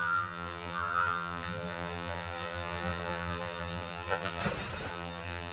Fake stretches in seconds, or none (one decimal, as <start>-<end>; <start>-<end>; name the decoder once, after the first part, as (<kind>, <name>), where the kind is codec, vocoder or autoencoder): 0.0-4.4 (vocoder, BigVGAN v2); 4.9-5.5